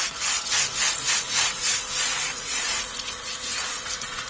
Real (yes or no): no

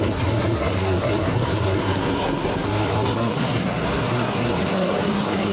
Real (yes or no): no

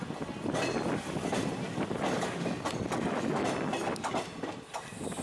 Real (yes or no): yes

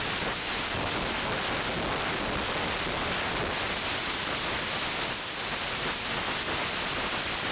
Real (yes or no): yes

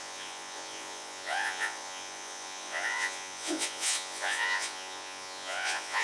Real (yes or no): no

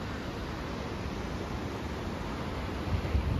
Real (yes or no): yes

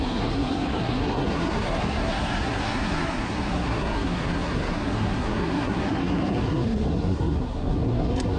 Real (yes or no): no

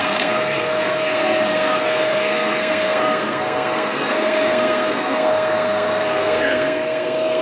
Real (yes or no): no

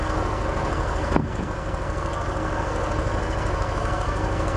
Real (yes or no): no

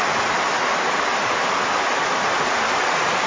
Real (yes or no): yes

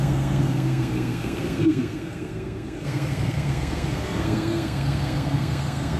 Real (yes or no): no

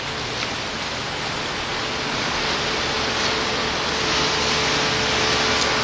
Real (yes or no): yes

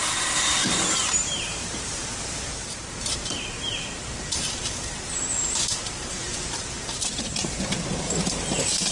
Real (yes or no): no